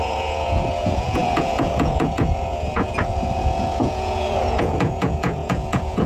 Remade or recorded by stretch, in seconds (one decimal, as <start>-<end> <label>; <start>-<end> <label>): 0.0-6.1 remade